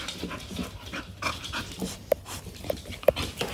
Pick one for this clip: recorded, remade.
recorded